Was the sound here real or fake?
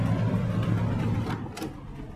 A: real